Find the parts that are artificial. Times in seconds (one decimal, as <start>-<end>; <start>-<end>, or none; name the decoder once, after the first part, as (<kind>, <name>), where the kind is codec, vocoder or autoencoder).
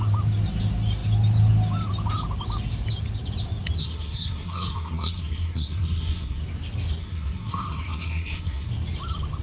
3.8-6.4 (codec, SNAC); 7.0-8.7